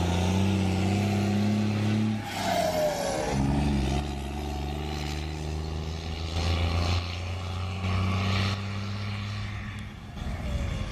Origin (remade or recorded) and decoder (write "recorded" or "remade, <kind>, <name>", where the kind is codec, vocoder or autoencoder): recorded